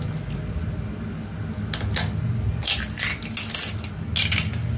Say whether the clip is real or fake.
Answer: real